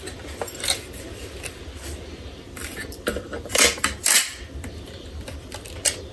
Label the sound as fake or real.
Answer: fake